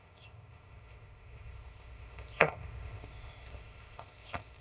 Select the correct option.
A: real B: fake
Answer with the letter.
B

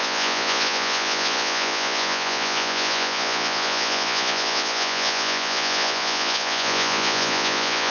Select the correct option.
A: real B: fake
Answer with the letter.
B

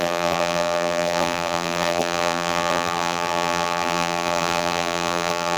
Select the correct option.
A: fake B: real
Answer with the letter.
A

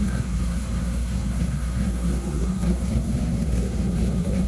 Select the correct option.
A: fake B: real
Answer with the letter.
A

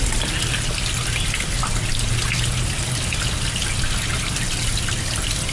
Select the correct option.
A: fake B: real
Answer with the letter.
B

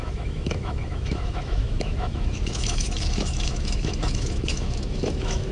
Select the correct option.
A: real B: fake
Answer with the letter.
B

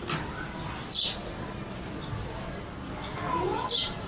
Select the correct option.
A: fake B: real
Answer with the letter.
B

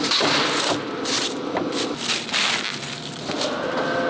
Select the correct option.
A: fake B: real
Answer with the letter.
B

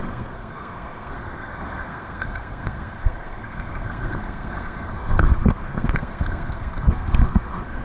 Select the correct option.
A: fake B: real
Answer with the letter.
A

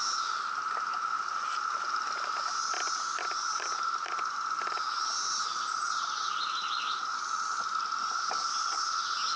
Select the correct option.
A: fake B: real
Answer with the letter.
B